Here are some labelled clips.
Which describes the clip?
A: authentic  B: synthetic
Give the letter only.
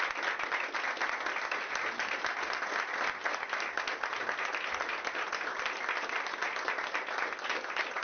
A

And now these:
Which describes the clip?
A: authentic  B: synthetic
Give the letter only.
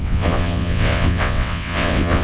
B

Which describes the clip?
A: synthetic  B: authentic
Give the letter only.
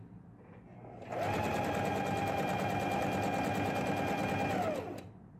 B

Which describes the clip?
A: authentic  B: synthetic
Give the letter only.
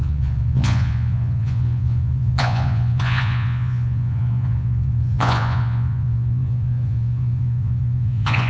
B